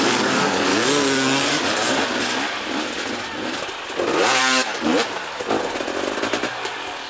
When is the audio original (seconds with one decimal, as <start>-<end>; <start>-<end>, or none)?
0.7-4.4; 4.9-6.5